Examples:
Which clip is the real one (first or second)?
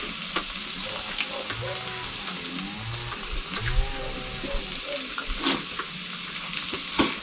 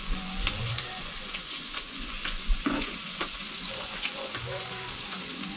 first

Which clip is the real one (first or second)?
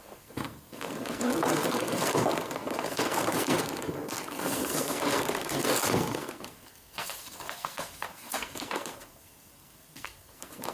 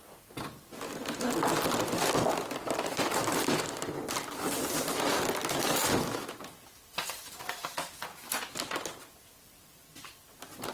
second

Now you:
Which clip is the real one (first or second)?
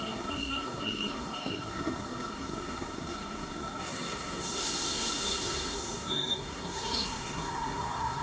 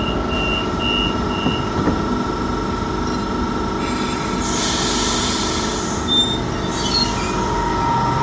second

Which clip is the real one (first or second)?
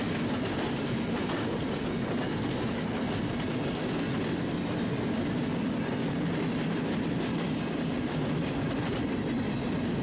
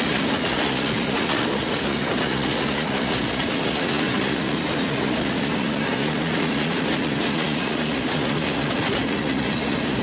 first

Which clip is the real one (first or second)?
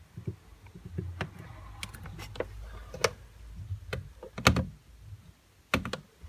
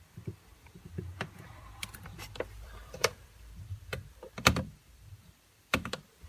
first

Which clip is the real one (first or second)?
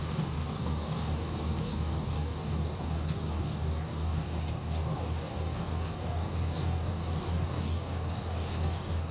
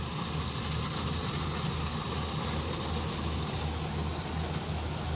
second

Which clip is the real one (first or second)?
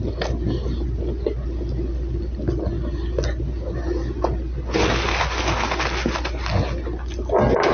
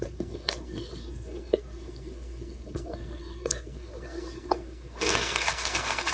first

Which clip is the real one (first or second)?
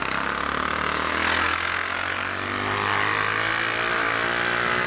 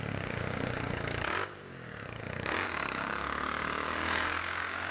first